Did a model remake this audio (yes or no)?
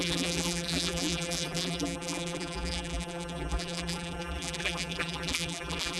yes